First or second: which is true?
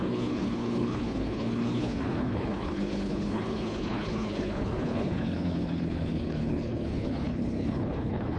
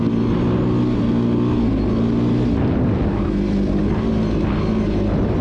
second